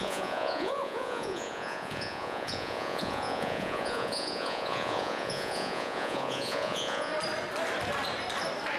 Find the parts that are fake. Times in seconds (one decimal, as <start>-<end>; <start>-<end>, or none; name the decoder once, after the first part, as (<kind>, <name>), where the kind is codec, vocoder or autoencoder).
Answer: 0.0-7.1 (vocoder, Vocos)